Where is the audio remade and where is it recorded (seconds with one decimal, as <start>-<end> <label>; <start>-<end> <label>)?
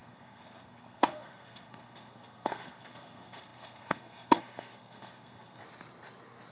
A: 0.0-5.6 remade; 5.6-6.5 recorded